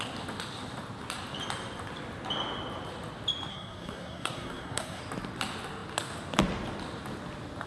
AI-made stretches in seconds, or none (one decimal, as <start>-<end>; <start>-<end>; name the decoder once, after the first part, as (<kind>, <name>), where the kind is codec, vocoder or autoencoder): 3.5-5.0 (codec, SNAC)